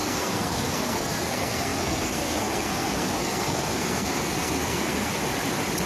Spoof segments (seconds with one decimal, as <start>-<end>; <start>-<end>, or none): 0.0-5.1

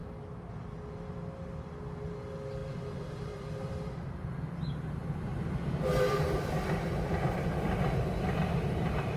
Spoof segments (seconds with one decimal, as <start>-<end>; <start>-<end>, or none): 2.6-4.3; 5.3-6.5